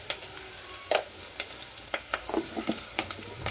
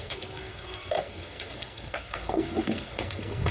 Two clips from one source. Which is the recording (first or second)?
first